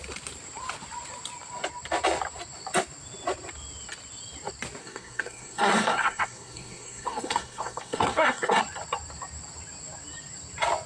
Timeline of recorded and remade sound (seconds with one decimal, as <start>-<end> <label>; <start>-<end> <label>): 0.0-4.8 recorded; 4.8-8.6 remade; 8.6-10.9 recorded